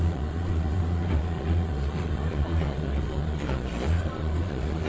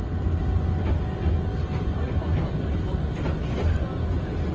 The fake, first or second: first